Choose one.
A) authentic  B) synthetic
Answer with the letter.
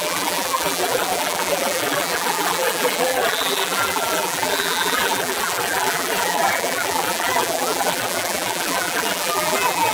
B